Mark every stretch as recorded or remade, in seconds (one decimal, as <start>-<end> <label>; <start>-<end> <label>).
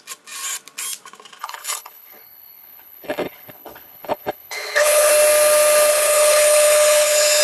0.0-1.4 recorded; 1.4-5.1 remade; 5.1-5.9 recorded; 5.9-7.4 remade